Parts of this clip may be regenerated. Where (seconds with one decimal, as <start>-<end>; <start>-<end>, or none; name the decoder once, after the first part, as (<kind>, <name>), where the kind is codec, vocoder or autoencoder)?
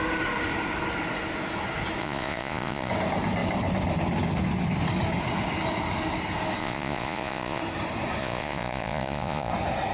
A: 2.0-2.9 (vocoder, Vocos); 6.6-7.6; 8.2-9.5